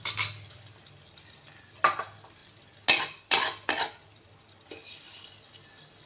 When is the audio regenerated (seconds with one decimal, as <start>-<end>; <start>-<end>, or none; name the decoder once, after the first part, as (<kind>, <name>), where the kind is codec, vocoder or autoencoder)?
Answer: 0.0-2.4 (vocoder, BigVGAN v2); 3.0-6.1